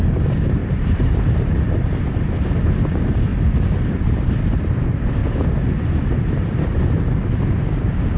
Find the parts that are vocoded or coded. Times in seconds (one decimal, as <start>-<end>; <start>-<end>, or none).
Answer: 0.6-1.6

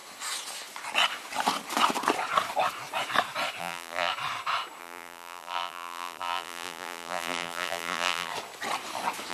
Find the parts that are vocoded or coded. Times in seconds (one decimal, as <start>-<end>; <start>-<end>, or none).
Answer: 3.6-4.1; 4.8-8.3

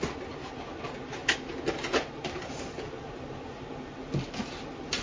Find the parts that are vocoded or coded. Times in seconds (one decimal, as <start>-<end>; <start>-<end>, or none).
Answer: none

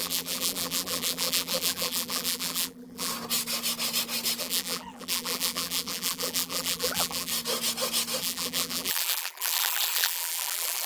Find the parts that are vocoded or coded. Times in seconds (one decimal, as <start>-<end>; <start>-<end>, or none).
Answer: 0.0-3.1; 4.4-7.3; 8.2-10.9